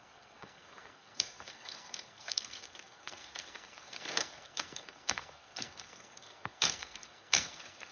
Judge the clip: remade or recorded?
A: remade